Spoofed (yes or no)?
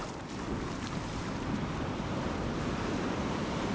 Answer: no